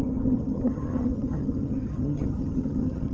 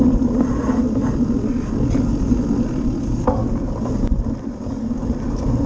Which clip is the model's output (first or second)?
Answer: first